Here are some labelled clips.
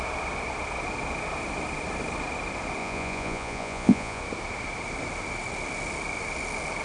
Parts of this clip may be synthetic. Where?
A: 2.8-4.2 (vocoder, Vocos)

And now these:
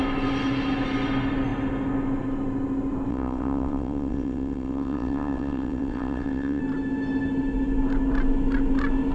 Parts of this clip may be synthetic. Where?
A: 3.1-6.6 (vocoder, WaveNeXt)